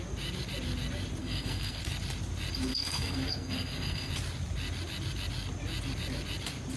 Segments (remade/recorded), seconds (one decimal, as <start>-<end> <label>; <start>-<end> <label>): 0.0-1.2 recorded; 1.2-1.8 remade; 1.8-2.7 recorded; 2.7-4.1 remade; 4.1-6.8 recorded